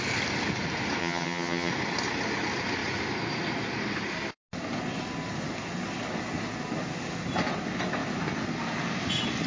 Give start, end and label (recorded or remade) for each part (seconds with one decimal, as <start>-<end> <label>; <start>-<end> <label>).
0.0-1.0 recorded; 1.0-1.7 remade; 1.7-9.5 recorded